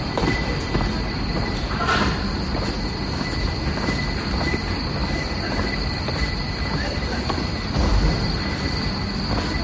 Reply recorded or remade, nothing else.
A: recorded